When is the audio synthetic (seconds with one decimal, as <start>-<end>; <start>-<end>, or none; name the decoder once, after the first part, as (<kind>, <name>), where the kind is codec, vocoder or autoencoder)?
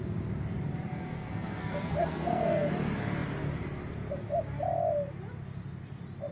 0.9-2.7 (codec, SNAC)